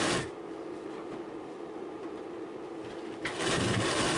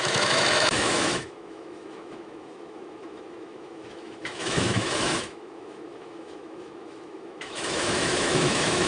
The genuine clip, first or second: first